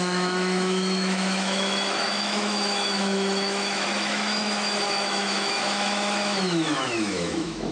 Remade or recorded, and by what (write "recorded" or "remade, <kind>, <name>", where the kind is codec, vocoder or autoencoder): remade, autoencoder, DAC-VAE